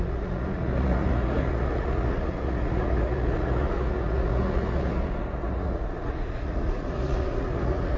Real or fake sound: fake